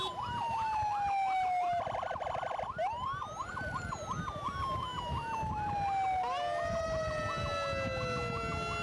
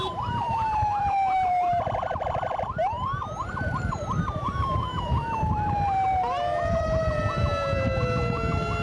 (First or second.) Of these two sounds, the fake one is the second